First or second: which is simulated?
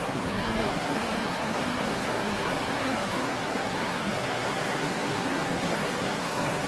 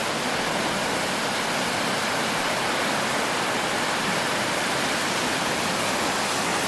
first